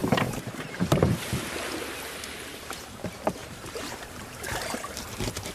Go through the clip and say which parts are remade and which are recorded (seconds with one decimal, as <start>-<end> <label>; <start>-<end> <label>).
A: 0.0-1.3 remade; 1.3-3.4 recorded; 3.4-5.0 remade; 5.0-5.5 recorded